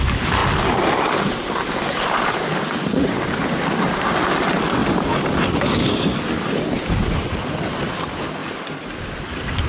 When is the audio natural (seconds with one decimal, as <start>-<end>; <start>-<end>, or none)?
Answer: 0.0-4.8; 7.5-8.4; 9.2-9.7